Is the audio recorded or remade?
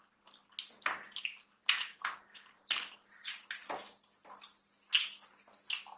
recorded